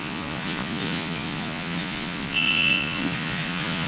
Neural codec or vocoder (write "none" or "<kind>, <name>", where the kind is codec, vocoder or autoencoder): vocoder, Vocos